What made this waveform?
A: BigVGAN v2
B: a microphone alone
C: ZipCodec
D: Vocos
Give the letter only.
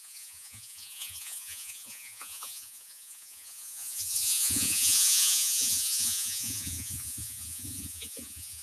D